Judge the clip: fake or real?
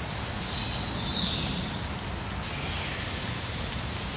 real